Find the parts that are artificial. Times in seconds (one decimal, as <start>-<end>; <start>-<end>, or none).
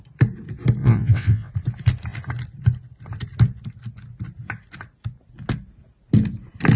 0.8-1.5